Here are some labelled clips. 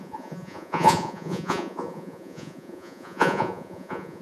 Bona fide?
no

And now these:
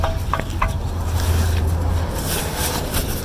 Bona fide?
yes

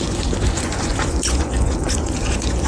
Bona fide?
no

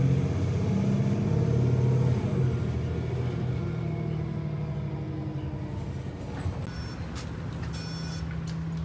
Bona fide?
yes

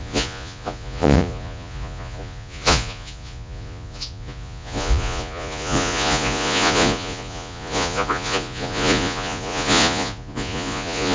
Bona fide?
no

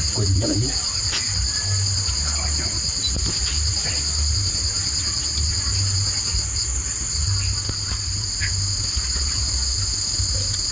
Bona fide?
yes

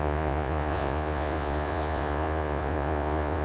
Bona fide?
no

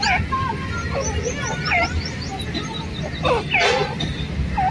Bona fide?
yes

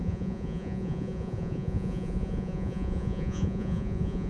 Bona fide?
no